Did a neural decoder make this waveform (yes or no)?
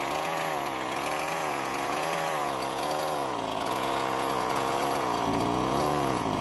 yes